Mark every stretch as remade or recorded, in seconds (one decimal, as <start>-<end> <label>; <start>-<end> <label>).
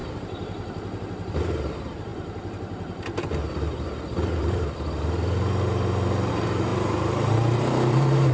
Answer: 0.0-1.4 recorded; 1.4-2.1 remade; 2.1-6.3 recorded; 6.3-8.3 remade